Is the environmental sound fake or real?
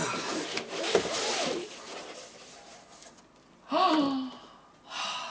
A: real